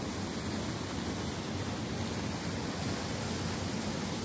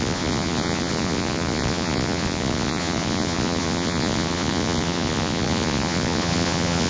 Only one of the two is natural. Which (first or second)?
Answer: first